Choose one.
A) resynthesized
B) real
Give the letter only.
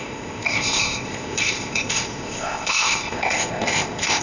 A